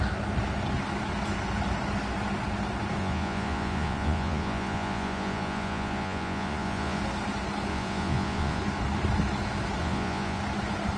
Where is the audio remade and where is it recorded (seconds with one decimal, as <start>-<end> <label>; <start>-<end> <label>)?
0.0-3.0 recorded; 3.0-7.0 remade; 7.0-7.7 recorded; 7.7-8.6 remade; 8.6-9.8 recorded; 9.8-10.4 remade; 10.4-11.0 recorded